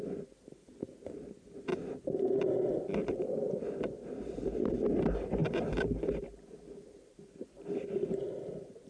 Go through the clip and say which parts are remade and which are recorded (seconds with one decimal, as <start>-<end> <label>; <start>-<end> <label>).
0.0-0.7 remade; 0.7-2.7 recorded; 2.7-8.9 remade